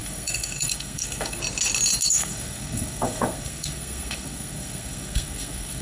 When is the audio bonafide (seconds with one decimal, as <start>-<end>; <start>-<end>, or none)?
1.4-2.0